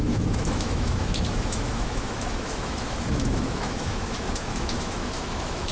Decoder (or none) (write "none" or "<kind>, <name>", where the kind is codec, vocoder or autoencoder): autoencoder, DAC-VAE